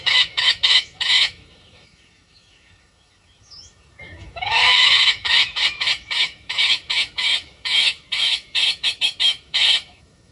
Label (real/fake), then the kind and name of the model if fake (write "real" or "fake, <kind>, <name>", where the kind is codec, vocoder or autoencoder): fake, autoencoder, DAC-VAE